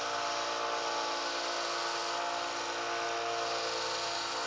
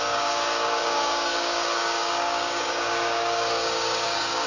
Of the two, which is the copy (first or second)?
second